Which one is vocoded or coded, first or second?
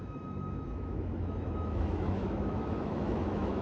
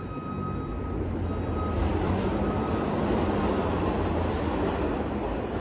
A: first